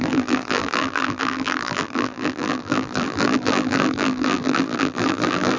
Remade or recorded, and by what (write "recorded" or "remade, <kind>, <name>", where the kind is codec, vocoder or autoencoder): remade, vocoder, BigVGAN v2